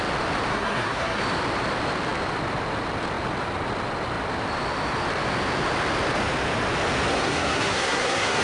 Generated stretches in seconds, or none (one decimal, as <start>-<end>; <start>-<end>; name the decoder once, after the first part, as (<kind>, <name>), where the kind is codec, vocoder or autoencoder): 0.5-1.2 (codec, SNAC); 7.1-8.4